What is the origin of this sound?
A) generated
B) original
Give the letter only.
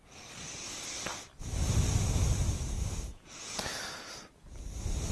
B